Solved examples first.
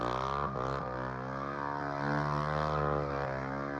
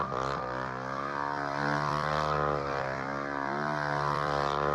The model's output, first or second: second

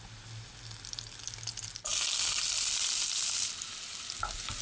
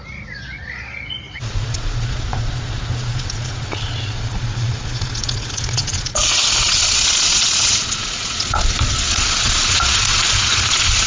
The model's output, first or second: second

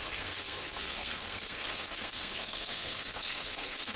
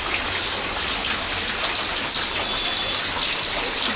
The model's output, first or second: first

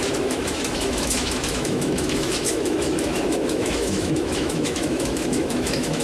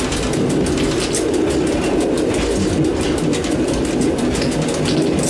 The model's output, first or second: first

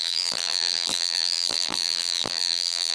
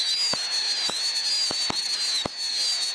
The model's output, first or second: first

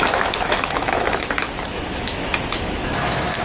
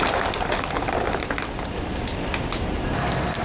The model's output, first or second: first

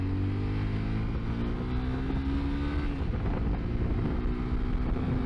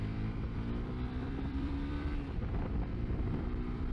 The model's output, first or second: second